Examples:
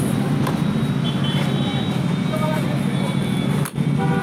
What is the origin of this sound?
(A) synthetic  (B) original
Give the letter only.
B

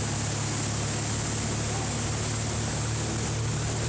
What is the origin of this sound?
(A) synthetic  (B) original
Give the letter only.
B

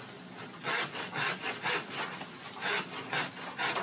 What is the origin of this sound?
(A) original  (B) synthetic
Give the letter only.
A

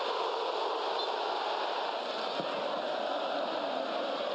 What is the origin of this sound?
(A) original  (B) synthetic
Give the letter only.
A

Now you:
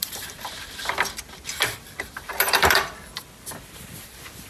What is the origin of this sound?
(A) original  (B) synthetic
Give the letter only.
B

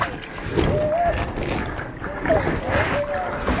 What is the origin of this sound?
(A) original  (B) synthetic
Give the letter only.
A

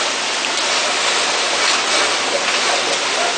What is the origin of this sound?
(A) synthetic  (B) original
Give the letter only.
B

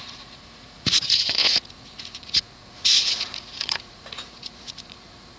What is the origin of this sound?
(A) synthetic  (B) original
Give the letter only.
A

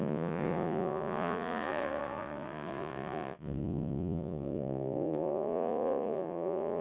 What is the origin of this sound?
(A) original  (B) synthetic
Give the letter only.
B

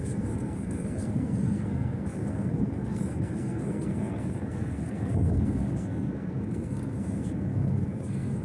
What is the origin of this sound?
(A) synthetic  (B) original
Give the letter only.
A